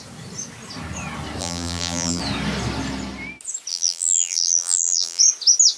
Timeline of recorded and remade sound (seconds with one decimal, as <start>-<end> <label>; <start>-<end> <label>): 0.0-1.4 recorded; 1.4-2.2 remade; 2.2-3.7 recorded; 3.7-5.2 remade; 5.2-5.8 recorded